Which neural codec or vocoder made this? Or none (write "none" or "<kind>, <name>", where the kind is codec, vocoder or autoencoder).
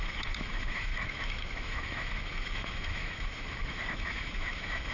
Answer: autoencoder, DAC-VAE